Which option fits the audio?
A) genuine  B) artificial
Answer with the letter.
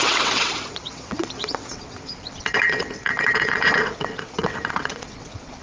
B